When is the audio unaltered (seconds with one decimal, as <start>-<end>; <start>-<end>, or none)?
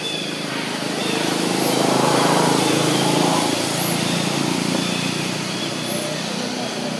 0.0-1.0; 2.1-7.0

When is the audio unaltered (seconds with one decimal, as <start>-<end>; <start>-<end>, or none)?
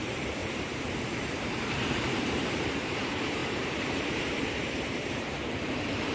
none